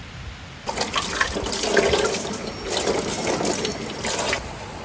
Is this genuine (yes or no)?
yes